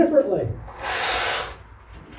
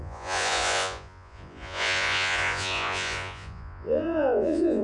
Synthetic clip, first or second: second